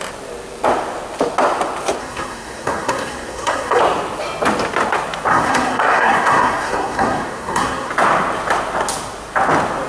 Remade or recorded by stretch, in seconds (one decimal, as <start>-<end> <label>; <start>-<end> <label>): 0.0-2.0 recorded; 2.0-3.8 remade; 3.8-5.3 recorded; 5.3-7.9 remade; 7.9-9.9 recorded